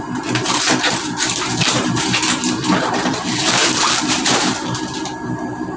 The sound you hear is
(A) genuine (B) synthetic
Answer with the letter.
B